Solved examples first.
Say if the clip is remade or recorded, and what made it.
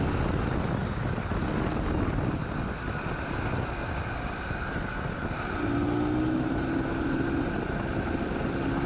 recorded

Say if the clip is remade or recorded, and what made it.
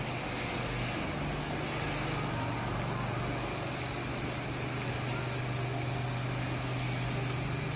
recorded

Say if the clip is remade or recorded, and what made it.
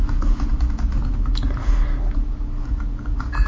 recorded